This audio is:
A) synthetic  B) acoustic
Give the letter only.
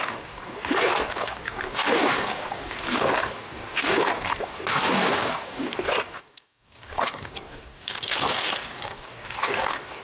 A